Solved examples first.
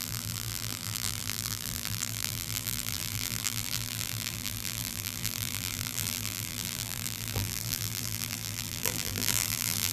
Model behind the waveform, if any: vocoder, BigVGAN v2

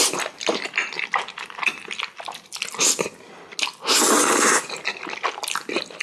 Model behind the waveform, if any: none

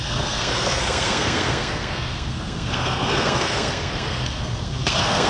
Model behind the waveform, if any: codec, SNAC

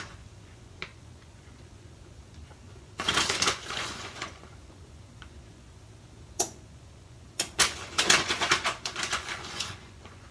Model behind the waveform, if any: vocoder, Vocos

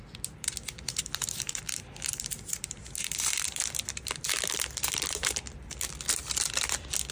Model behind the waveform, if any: vocoder, BigVGAN v2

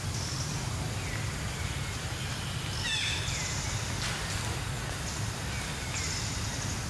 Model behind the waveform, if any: none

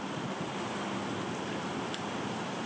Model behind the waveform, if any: none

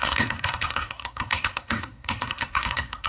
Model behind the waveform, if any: codec, SNAC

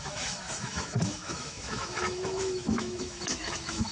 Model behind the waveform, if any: autoencoder, DAC-VAE